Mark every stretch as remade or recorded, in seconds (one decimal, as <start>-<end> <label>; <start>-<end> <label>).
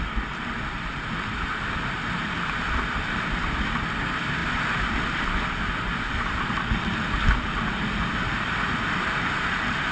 0.0-9.9 recorded